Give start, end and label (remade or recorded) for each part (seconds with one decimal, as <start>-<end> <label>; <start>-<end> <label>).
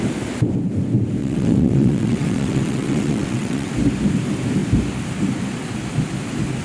0.0-1.2 recorded; 1.2-3.7 remade; 3.7-6.6 recorded